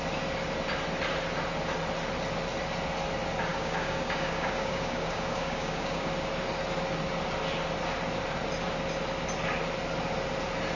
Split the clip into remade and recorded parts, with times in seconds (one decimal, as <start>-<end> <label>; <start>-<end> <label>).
0.0-3.5 recorded; 3.5-6.1 remade; 6.1-10.8 recorded